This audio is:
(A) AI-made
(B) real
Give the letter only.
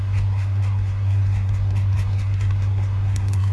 A